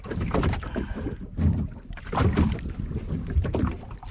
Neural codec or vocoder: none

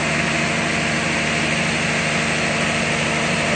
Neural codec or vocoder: none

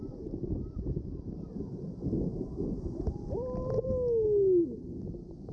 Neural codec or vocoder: none